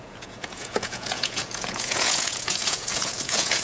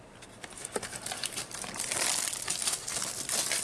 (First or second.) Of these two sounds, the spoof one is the first